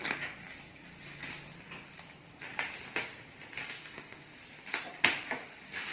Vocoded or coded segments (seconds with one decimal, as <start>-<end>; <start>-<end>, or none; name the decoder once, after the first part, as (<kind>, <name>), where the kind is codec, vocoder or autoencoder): 3.8-4.3 (autoencoder, DAC-VAE)